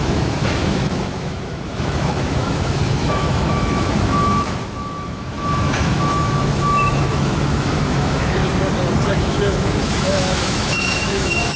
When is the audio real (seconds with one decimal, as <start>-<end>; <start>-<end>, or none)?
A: 8.4-9.1